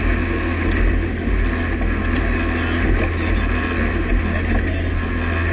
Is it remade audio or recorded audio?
recorded